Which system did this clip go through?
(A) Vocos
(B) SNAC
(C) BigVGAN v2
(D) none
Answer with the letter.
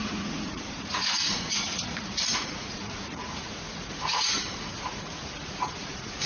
A